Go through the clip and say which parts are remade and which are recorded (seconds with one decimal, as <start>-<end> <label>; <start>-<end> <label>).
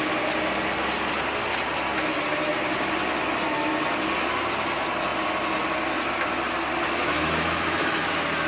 0.0-7.0 recorded; 7.0-8.1 remade; 8.1-8.5 recorded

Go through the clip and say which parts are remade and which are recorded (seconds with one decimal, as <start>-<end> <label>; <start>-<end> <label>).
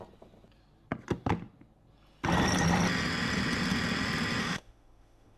0.0-4.4 recorded; 4.4-5.4 remade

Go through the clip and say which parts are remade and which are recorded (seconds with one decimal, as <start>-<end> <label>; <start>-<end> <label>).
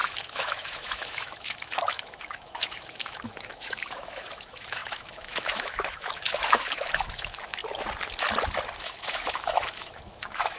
0.0-7.6 remade; 7.6-8.8 recorded; 8.8-10.6 remade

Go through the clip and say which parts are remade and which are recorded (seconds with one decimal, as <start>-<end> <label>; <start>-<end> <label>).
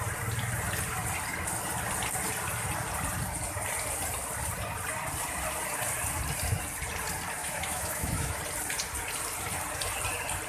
0.0-7.4 recorded; 7.4-8.4 remade; 8.4-10.5 recorded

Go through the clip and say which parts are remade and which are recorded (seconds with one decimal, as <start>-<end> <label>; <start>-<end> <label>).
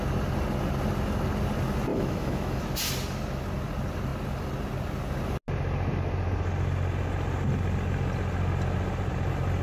0.0-1.9 recorded; 1.9-2.6 remade; 2.6-9.6 recorded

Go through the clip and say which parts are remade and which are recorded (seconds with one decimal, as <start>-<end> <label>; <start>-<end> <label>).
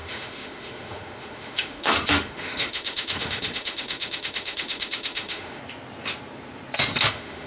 0.0-5.6 remade; 5.6-7.1 recorded; 7.1-7.5 remade